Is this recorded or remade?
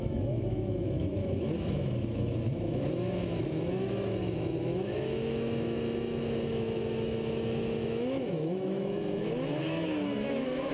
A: remade